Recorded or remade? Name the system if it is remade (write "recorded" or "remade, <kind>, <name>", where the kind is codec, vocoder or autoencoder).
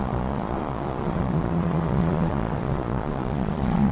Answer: remade, vocoder, Vocos